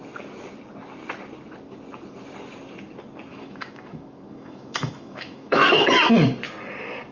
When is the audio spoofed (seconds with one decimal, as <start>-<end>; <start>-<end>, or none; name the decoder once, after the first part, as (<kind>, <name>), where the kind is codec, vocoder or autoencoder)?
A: 3.3-5.9 (autoencoder, DAC-VAE)

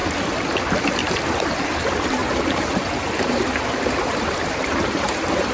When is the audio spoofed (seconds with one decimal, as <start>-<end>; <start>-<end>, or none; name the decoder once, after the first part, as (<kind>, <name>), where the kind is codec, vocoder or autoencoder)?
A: 1.4-5.5 (vocoder, BigVGAN v2)

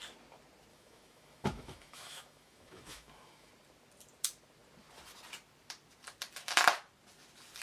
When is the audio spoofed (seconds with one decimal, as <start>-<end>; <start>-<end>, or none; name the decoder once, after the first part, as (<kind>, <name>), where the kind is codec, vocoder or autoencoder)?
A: 0.7-3.5 (autoencoder, DAC-VAE)

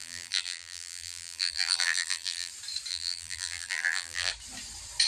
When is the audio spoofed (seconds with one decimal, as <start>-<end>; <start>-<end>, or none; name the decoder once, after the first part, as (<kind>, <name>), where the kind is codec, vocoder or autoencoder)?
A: 0.0-2.5 (vocoder, BigVGAN v2); 2.9-4.3

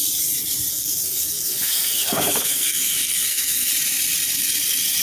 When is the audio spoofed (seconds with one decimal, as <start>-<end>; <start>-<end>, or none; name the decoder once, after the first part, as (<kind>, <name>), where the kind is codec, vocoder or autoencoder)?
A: 0.7-3.7 (codec, SNAC)